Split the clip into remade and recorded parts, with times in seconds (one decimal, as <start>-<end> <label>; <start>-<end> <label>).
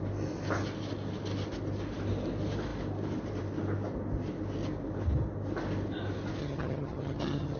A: 0.0-6.4 recorded; 6.4-7.6 remade